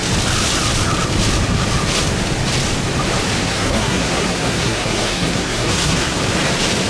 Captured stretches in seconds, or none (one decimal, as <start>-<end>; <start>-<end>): 0.0-3.4; 6.2-6.9